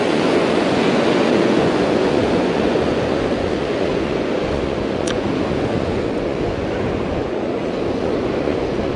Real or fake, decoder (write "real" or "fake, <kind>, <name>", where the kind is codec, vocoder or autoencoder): fake, vocoder, Vocos